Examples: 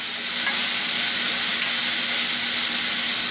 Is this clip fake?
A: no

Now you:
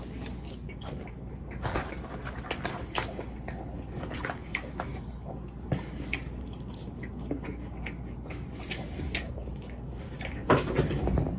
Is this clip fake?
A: yes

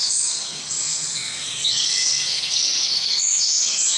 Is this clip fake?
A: yes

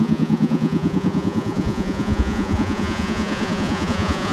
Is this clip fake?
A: yes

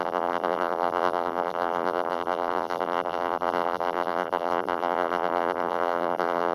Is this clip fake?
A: yes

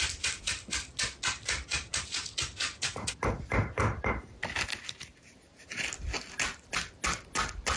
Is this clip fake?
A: no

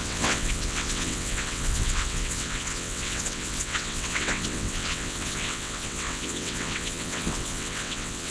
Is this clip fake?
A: yes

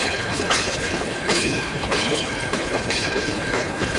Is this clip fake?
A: yes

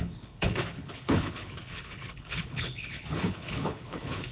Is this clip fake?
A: yes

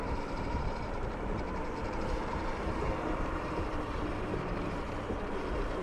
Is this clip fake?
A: yes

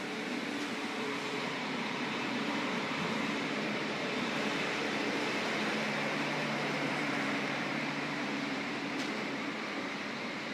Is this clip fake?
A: yes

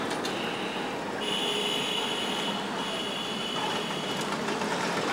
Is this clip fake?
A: no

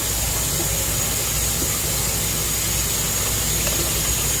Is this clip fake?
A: no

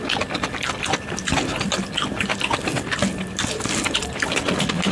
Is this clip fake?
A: no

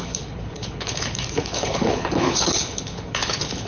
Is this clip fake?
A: yes